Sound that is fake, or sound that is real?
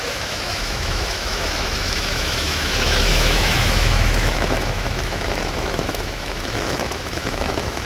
fake